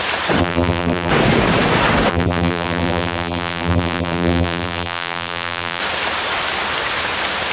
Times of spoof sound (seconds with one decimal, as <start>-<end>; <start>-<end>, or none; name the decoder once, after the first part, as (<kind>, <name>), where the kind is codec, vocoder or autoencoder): 0.4-1.1 (vocoder, BigVGAN v2); 2.1-5.8